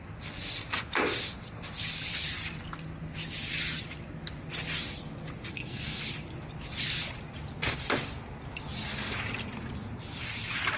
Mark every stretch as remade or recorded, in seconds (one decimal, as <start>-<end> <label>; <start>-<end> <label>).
0.0-5.5 recorded; 5.5-6.0 remade; 6.0-10.8 recorded